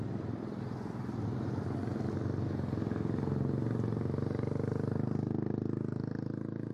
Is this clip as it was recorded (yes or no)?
yes